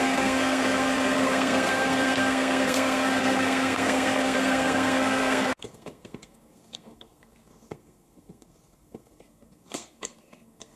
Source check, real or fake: fake